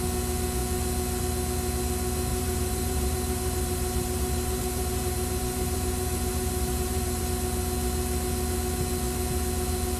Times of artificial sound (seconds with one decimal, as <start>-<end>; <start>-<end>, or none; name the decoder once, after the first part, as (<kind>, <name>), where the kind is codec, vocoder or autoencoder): 2.3-7.2 (vocoder, BigVGAN v2)